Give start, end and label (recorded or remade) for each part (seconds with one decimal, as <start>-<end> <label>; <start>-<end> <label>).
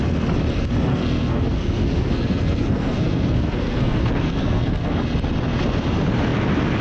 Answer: 0.0-0.9 recorded; 0.9-5.0 remade; 5.0-6.8 recorded